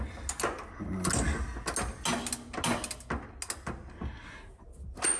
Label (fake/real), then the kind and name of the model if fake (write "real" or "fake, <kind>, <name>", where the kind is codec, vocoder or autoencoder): real